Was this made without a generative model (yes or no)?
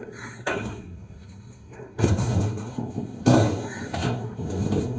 no